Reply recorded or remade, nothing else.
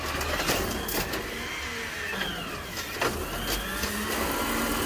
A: recorded